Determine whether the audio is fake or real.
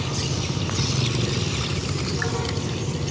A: real